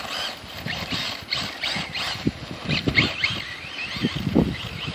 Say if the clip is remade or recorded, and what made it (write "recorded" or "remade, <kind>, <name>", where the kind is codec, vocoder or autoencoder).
recorded